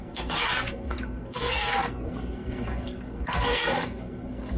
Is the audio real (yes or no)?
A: no